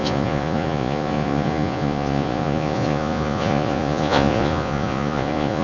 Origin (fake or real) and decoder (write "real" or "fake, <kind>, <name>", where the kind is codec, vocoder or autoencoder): fake, vocoder, Vocos